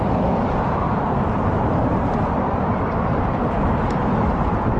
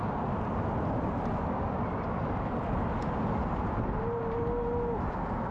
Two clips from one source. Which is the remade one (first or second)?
first